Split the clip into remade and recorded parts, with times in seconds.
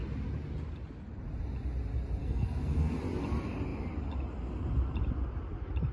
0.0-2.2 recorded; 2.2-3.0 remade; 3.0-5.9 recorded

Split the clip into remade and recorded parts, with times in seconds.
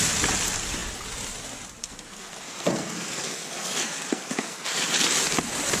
0.0-1.8 recorded; 1.8-4.9 remade; 4.9-5.8 recorded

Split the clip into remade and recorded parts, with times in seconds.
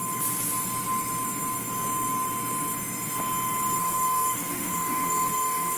0.0-3.8 recorded; 3.8-5.8 remade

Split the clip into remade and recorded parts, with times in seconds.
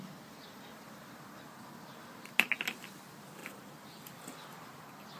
0.0-3.4 recorded; 3.4-4.1 remade; 4.1-5.2 recorded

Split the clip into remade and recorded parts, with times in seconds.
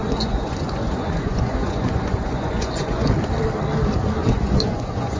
0.0-3.1 remade; 3.1-4.2 recorded; 4.2-5.2 remade